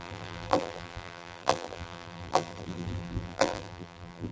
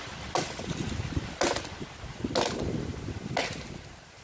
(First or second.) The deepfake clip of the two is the first